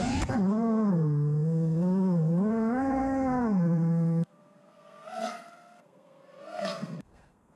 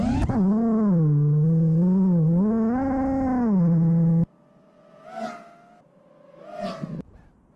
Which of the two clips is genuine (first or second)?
second